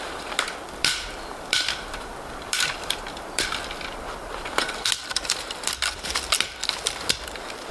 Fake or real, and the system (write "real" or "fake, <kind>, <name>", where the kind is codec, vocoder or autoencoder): fake, vocoder, BigVGAN v2